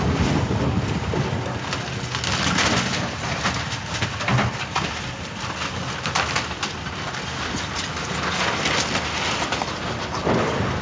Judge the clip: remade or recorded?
recorded